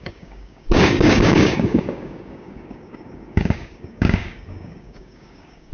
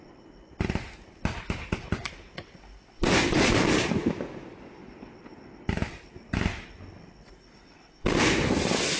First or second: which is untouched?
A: second